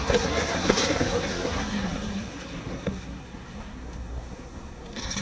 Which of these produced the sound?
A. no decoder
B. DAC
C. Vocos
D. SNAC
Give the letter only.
D